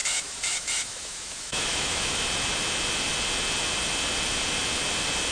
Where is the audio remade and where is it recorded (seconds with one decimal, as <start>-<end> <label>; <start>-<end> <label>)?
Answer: 0.0-2.2 remade; 2.2-5.3 recorded